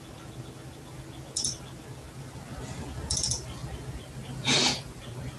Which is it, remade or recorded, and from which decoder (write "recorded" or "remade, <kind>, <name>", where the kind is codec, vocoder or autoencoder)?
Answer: recorded